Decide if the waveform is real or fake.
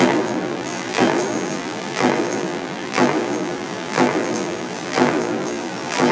fake